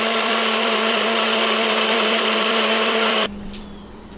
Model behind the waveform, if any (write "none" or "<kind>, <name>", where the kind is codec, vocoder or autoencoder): vocoder, BigVGAN v2